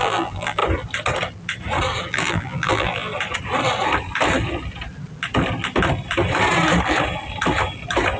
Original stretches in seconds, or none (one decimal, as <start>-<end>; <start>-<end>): 0.6-2.1; 3.1-8.2